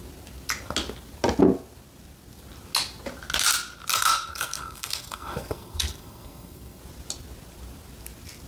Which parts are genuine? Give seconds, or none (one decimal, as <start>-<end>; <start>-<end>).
0.0-3.9; 6.8-8.5